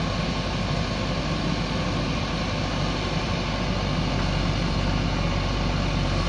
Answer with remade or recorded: recorded